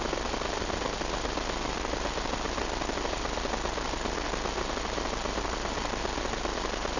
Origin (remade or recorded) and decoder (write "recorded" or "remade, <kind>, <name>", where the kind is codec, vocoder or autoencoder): recorded